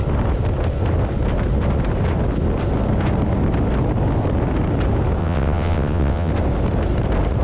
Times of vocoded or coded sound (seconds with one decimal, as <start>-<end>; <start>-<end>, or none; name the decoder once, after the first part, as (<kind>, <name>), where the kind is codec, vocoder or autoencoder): 5.2-6.3 (vocoder, WaveNeXt)